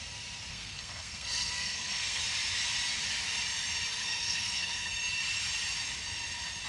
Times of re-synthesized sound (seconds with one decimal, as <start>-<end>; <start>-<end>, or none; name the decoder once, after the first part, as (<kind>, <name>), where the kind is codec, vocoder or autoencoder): 0.5-2.2 (codec, SNAC); 4.0-4.9